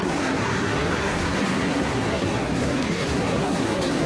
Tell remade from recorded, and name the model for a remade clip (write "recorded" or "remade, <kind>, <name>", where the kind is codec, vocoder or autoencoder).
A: remade, codec, SNAC